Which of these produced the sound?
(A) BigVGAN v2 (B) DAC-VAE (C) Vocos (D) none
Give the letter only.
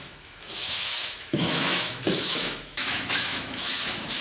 B